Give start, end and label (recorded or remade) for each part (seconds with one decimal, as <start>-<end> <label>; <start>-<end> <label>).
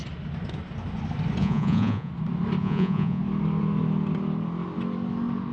0.0-1.4 recorded; 1.4-2.1 remade; 2.1-2.6 recorded; 2.6-3.2 remade; 3.2-5.5 recorded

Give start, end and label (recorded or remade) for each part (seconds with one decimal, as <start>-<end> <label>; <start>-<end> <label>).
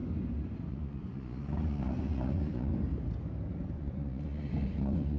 0.0-0.7 recorded; 0.7-2.7 remade; 2.7-3.7 recorded; 3.7-5.2 remade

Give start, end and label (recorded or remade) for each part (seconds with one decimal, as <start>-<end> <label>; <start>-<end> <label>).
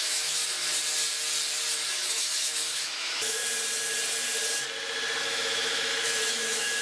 0.0-0.4 remade; 0.4-1.9 recorded; 1.9-3.4 remade; 3.4-5.2 recorded; 5.2-6.8 remade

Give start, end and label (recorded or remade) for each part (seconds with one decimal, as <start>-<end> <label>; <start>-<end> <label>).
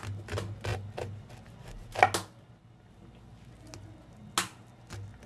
0.0-5.3 recorded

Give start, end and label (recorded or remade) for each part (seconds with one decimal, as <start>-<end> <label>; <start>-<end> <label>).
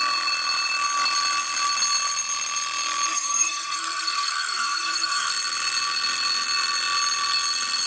0.0-3.1 recorded; 3.1-5.3 remade; 5.3-7.9 recorded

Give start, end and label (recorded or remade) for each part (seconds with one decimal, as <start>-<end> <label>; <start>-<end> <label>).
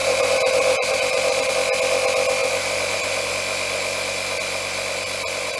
0.0-1.5 remade; 1.5-2.4 recorded; 2.4-3.3 remade; 3.3-5.6 recorded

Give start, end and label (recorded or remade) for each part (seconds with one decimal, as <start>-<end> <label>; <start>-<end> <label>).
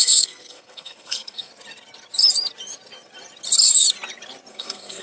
0.0-1.5 remade; 1.5-4.5 recorded; 4.5-5.0 remade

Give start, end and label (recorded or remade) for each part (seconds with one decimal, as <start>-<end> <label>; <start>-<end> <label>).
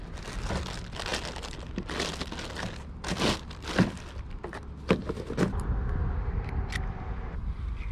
0.0-7.9 recorded